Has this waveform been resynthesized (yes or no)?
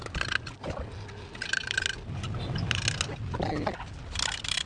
no